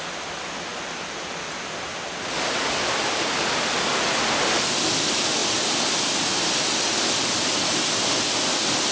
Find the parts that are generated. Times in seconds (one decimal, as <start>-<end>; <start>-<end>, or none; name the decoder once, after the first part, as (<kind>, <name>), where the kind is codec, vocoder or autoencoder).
none